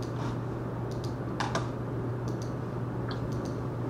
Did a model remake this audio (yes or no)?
no